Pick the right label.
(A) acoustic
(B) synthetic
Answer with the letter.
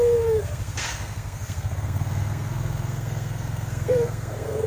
B